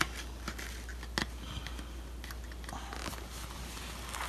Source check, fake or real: real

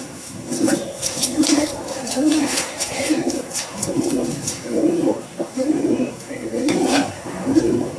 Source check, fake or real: fake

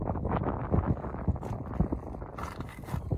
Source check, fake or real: real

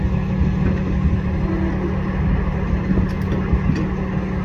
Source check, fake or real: real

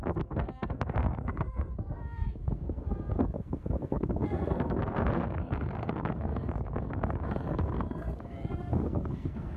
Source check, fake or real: fake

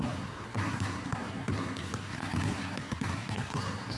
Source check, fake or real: fake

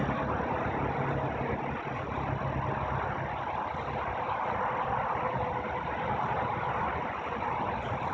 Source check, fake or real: real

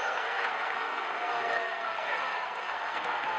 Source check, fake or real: fake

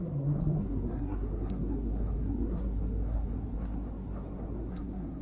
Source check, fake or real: fake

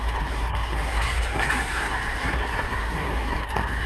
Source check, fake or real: fake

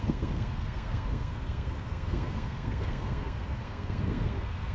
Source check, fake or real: fake